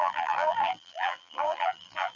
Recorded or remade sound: remade